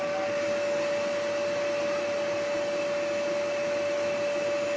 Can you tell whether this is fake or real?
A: real